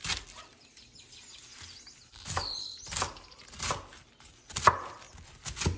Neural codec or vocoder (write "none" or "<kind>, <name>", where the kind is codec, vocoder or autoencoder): none